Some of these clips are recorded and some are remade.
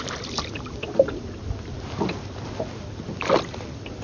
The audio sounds recorded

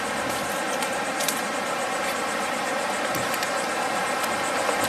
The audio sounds recorded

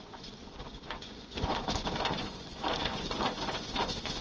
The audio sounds remade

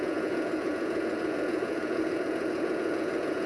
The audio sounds remade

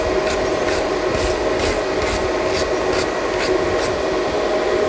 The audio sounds recorded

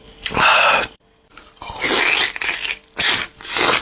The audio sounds recorded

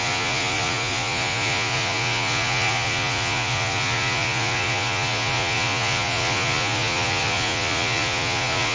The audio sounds remade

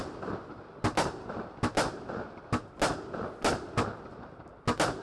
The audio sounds recorded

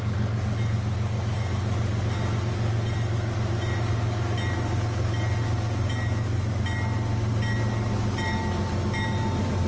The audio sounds recorded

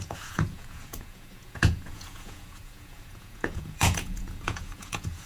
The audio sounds remade